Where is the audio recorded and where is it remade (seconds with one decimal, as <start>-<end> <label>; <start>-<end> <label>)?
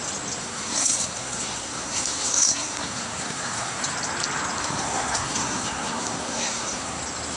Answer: 0.0-0.4 recorded; 0.4-3.8 remade; 3.8-4.6 recorded; 4.6-7.0 remade; 7.0-7.4 recorded